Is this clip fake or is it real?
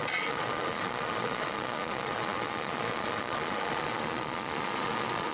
fake